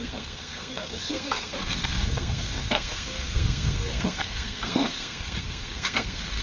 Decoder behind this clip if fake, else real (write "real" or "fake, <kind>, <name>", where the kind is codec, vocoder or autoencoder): fake, codec, SNAC